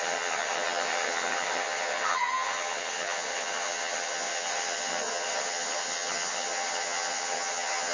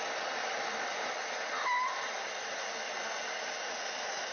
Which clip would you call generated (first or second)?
first